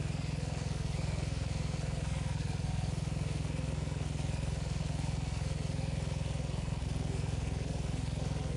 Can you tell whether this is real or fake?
fake